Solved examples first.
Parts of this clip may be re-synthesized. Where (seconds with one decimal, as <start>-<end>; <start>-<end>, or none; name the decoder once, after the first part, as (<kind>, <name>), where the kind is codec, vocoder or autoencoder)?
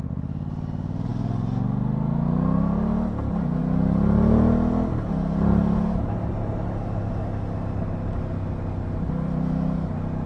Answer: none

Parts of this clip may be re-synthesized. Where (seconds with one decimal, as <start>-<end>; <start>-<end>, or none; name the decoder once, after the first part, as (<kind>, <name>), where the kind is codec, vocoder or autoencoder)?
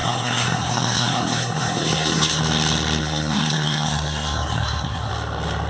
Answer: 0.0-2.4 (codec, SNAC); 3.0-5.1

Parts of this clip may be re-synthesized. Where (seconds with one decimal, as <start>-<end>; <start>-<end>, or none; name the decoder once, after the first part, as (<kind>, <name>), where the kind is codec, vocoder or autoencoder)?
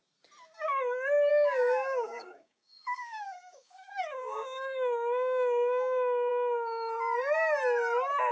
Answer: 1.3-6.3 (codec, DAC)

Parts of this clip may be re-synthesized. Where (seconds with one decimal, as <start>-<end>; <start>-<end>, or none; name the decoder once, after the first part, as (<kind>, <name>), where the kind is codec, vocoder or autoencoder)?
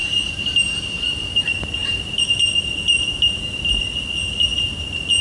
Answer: 3.1-3.7 (vocoder, BigVGAN v2)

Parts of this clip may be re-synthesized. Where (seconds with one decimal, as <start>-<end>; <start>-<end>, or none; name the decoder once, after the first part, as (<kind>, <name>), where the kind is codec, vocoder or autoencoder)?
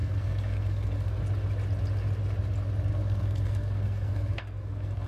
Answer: 0.0-1.2 (codec, SNAC); 2.9-5.1